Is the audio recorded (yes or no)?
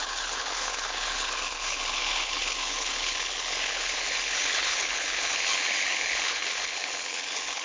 no